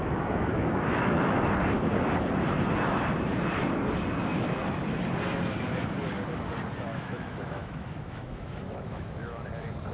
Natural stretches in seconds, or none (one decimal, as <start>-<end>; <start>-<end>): 1.4-6.9; 9.5-9.9